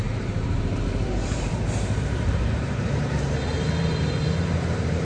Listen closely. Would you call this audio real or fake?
fake